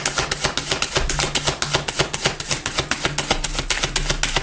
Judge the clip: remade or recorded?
recorded